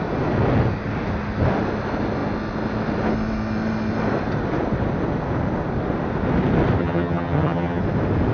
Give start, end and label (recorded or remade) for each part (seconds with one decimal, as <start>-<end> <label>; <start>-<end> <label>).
0.0-6.8 recorded; 6.8-7.8 remade; 7.8-8.3 recorded